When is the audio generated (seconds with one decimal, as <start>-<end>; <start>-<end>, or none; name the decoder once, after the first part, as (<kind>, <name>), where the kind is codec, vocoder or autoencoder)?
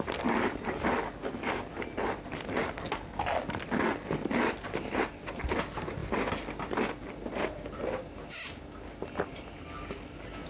none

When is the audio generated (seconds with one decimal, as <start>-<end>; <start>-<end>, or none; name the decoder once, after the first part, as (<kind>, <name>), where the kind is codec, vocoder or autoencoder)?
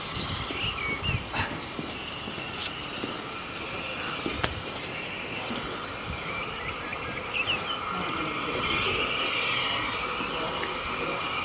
none